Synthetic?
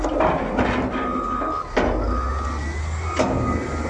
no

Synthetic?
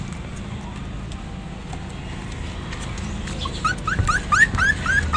no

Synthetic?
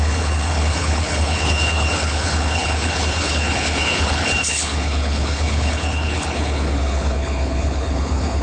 yes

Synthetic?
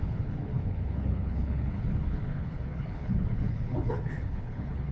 yes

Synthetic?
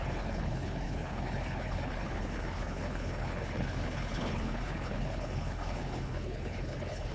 yes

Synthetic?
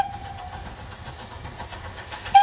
no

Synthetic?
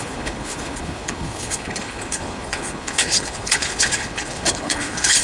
yes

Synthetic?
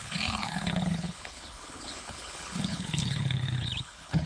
yes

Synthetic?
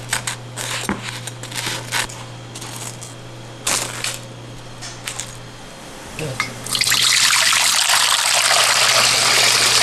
no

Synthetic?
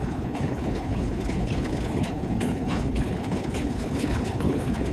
yes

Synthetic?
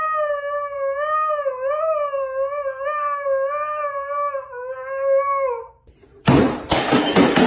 no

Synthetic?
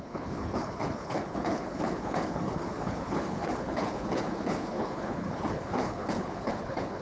yes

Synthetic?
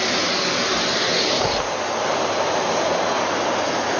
no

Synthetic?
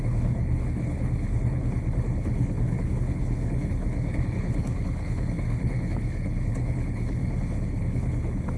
yes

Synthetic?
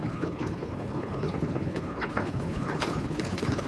yes